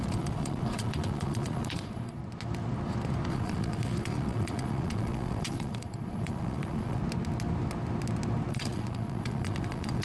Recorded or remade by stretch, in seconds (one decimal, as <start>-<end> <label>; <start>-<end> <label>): 0.0-2.2 remade; 2.2-3.3 recorded; 3.3-7.0 remade; 7.0-8.5 recorded; 8.5-10.0 remade